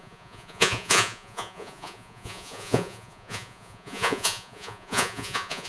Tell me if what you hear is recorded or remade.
remade